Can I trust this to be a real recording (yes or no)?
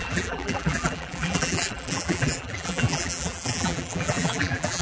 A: no